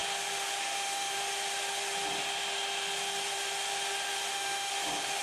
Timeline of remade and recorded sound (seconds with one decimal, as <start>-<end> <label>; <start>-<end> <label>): 0.0-0.6 recorded; 0.6-1.2 remade; 1.2-4.3 recorded; 4.3-4.7 remade; 4.7-5.2 recorded